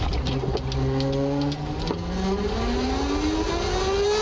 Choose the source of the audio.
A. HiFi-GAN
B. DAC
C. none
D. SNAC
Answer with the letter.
C